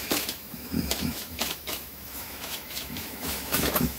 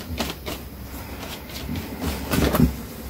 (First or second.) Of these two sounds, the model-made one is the first